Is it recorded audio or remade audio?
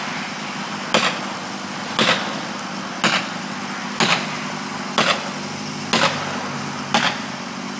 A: recorded